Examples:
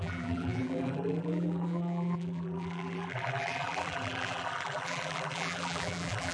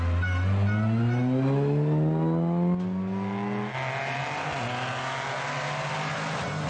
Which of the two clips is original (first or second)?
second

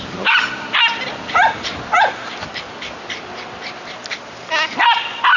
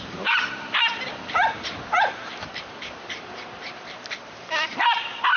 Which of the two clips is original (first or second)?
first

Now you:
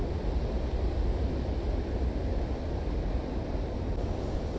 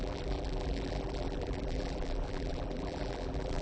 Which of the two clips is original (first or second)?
first